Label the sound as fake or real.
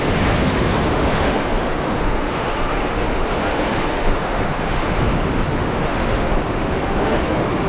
fake